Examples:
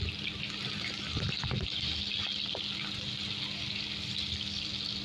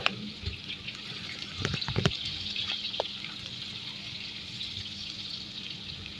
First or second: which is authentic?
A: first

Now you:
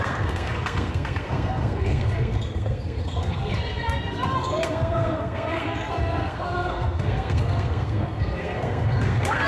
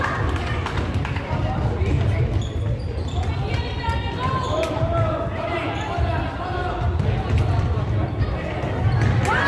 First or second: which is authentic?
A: second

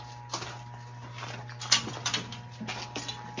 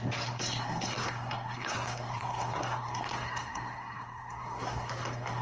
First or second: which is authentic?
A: first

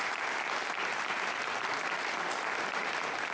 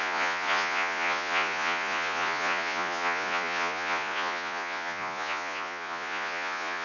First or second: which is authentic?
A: first